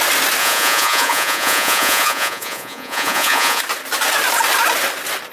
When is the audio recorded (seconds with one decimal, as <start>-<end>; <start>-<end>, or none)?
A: 0.0-0.4; 3.6-5.3